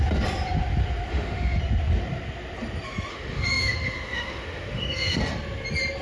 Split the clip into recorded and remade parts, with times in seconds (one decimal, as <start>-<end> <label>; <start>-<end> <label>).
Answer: 0.0-1.1 recorded; 1.1-1.6 remade; 1.6-3.1 recorded; 3.1-5.2 remade; 5.2-6.0 recorded